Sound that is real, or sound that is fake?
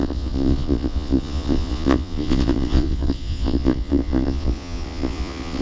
fake